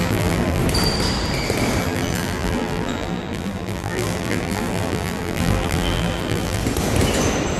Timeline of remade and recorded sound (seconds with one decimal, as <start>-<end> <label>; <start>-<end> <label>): 0.0-0.6 remade; 0.6-1.8 recorded; 1.8-6.6 remade; 6.6-7.6 recorded